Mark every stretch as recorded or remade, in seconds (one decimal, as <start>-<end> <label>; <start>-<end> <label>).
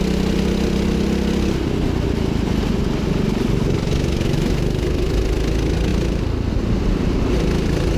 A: 0.0-8.0 recorded